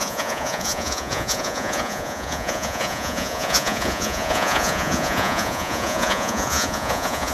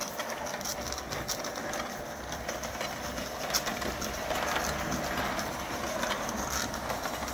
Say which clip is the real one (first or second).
second